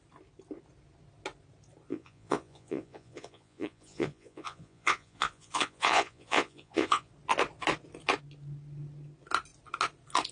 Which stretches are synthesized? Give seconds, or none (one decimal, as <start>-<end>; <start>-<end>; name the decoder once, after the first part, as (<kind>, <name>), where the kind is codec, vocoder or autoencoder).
1.9-7.1 (vocoder, Vocos)